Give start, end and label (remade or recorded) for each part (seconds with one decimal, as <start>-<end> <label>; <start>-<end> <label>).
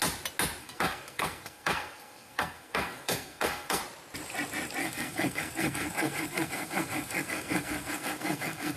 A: 0.0-0.6 recorded; 0.6-3.8 remade; 3.8-4.8 recorded; 4.8-8.8 remade